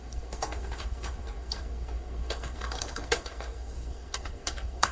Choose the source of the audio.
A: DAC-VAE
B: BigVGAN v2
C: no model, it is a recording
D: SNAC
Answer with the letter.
D